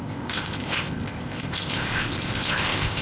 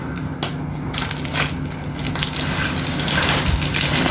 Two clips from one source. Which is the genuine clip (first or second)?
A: second